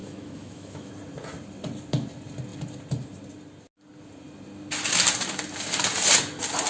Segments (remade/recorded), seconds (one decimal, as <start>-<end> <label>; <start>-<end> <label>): 0.0-0.9 remade; 0.9-6.7 recorded